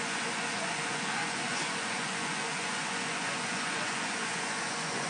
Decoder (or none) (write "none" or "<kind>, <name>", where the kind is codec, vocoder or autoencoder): vocoder, Vocos